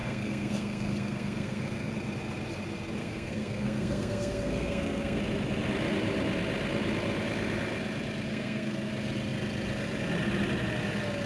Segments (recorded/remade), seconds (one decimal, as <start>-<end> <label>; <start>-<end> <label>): 0.0-1.9 remade; 1.9-3.0 recorded; 3.0-5.2 remade; 5.2-8.3 recorded; 8.3-8.9 remade; 8.9-11.3 recorded